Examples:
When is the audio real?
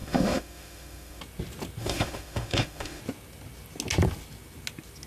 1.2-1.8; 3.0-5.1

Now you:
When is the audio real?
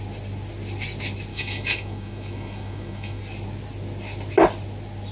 0.0-1.3; 3.2-5.1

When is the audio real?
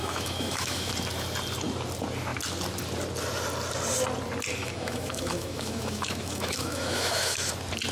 0.9-4.6; 7.5-7.9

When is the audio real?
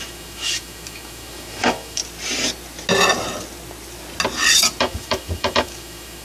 2.0-4.8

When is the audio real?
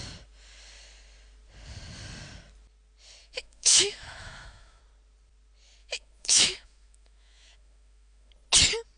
0.0-3.2; 4.8-5.8; 8.3-9.0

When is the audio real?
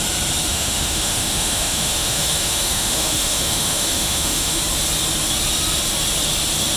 0.0-0.5; 4.6-6.8